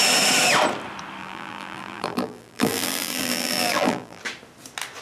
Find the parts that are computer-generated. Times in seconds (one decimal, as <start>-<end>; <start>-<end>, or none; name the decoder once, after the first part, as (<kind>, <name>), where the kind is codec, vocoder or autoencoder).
1.2-4.2 (vocoder, BigVGAN v2)